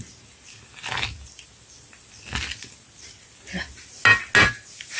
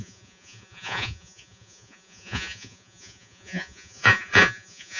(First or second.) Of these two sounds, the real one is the first